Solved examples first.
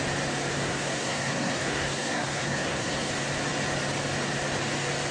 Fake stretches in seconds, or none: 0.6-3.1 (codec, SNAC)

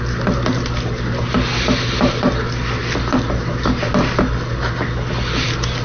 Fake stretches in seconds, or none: none